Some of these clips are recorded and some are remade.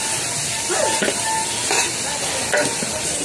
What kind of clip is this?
recorded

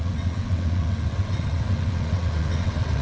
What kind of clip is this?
remade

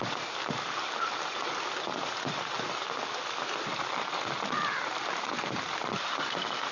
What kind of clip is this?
recorded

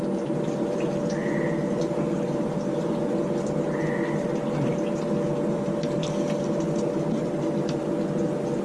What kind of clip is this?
recorded